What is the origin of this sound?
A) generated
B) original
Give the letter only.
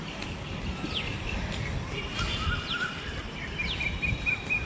B